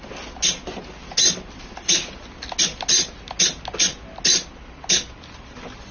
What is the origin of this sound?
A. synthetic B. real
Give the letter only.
B